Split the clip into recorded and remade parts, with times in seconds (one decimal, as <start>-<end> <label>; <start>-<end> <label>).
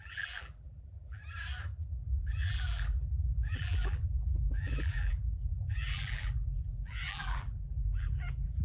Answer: 0.0-1.2 remade; 1.2-2.0 recorded; 2.0-8.6 remade